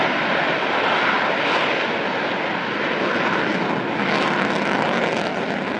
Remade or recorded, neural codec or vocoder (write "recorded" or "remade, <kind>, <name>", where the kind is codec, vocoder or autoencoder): recorded